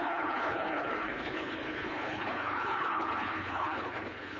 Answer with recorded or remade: remade